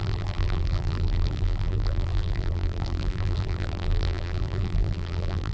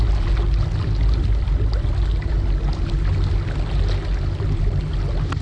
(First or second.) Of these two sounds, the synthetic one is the first